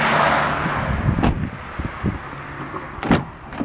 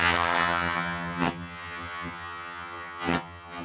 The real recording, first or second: first